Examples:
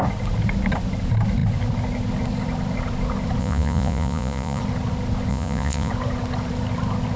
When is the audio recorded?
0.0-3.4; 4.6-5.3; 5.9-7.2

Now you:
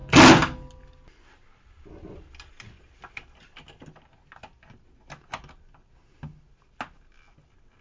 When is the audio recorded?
0.0-7.8